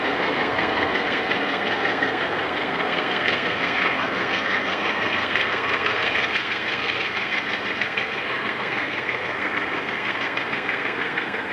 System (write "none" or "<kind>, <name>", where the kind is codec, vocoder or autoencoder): codec, SNAC